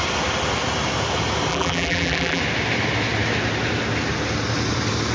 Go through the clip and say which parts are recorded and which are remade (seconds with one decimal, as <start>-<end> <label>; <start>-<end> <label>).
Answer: 0.0-1.5 recorded; 1.5-2.4 remade; 2.4-5.1 recorded